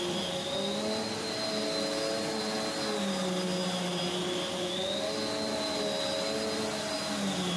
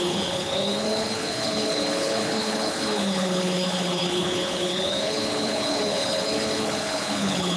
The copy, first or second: second